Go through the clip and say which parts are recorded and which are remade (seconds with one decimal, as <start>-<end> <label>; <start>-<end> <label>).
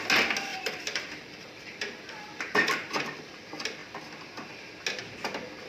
0.0-0.5 recorded; 0.5-3.4 remade; 3.4-5.7 recorded